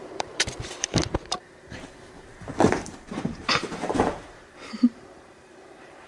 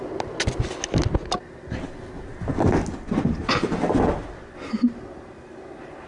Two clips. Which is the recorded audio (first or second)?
second